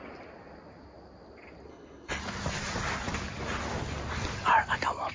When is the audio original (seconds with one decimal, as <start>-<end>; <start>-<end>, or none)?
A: 0.0-1.7; 2.2-5.1